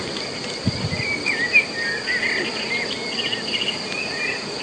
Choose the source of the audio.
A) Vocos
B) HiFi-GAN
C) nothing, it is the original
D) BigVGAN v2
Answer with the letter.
C